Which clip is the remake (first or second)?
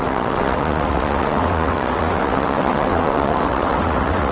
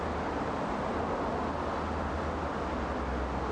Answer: first